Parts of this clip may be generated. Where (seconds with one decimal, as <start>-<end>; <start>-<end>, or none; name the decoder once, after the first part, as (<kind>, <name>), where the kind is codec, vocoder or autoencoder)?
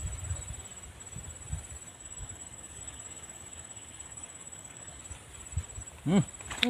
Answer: 1.9-5.0 (codec, DAC)